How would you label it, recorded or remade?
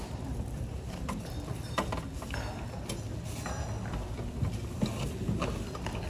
recorded